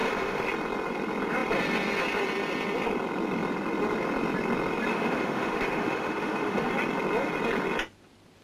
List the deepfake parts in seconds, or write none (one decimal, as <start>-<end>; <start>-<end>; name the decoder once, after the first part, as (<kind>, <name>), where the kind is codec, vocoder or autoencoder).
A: 0.0-0.5 (autoencoder, DAC-VAE); 4.9-6.7